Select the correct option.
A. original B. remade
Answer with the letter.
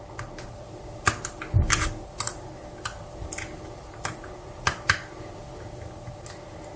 A